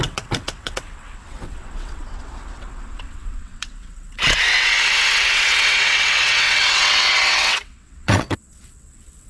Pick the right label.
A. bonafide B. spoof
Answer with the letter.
B